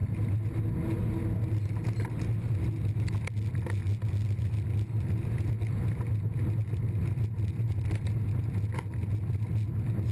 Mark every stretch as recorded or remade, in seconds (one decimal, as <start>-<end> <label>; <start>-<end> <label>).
0.0-10.1 recorded